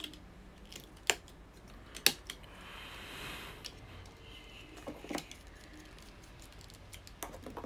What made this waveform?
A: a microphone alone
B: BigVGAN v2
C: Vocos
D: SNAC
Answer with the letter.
A